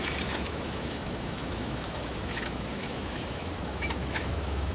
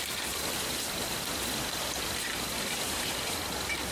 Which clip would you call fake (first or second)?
first